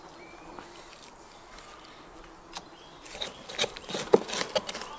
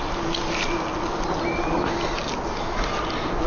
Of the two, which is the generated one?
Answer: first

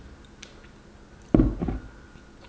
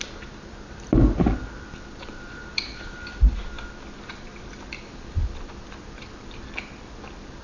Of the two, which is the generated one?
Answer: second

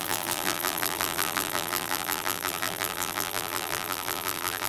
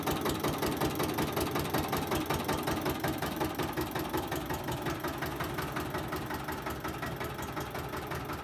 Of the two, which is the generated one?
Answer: first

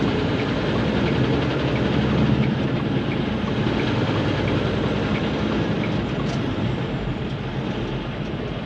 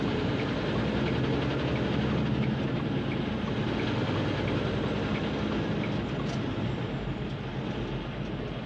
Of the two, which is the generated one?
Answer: first